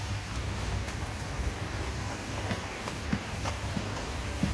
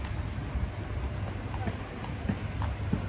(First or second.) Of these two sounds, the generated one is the first